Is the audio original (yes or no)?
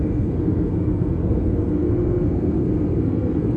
no